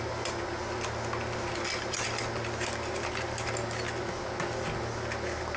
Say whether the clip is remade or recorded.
recorded